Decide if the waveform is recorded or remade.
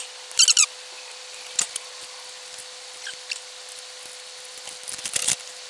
recorded